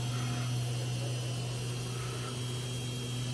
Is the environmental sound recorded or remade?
recorded